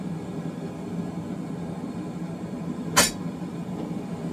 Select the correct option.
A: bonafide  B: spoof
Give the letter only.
A